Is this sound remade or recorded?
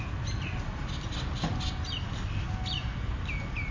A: recorded